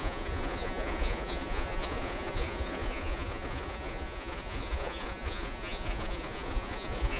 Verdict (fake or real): fake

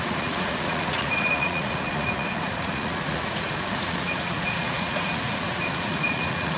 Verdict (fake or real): fake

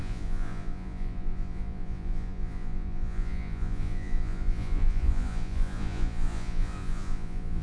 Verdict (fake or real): fake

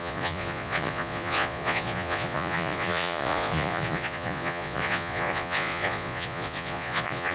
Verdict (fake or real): fake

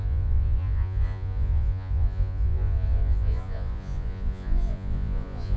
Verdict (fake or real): fake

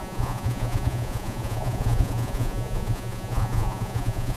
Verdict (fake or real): fake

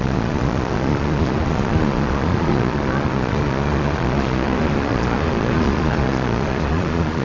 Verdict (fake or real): fake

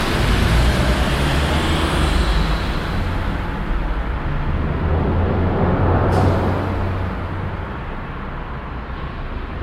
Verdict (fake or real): real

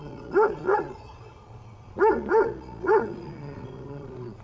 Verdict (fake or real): fake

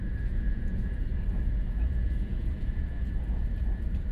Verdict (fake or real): fake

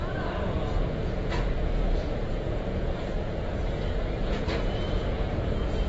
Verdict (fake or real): fake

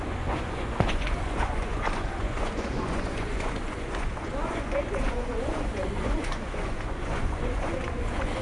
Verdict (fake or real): fake